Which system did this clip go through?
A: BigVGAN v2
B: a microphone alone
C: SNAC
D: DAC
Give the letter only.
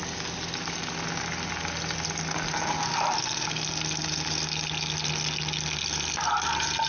B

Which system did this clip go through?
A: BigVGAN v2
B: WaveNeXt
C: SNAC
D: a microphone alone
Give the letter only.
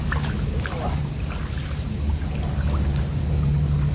D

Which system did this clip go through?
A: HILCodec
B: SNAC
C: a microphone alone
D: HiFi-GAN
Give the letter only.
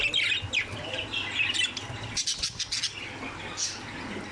C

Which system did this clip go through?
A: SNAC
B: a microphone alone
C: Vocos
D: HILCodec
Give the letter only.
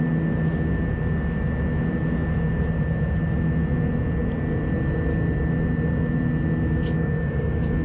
B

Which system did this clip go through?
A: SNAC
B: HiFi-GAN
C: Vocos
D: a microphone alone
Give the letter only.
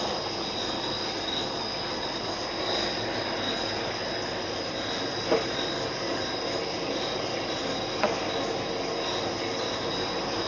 D